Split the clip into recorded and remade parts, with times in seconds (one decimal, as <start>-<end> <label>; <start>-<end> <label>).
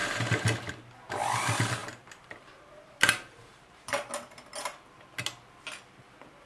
0.0-1.8 recorded; 1.8-4.1 remade; 4.1-6.5 recorded